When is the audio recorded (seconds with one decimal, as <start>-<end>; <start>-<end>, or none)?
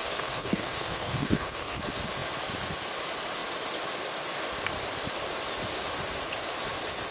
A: 1.8-7.1